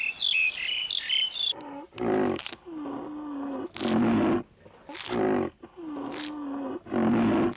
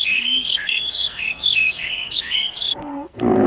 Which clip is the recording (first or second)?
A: first